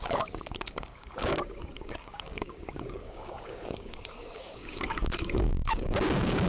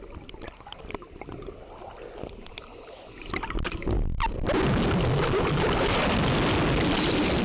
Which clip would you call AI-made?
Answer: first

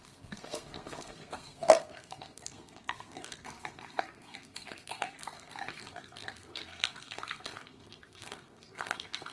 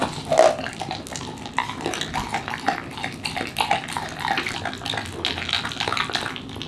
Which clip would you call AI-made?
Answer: first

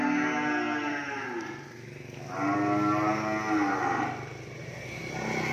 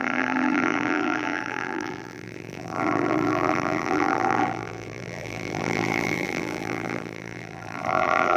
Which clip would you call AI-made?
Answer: second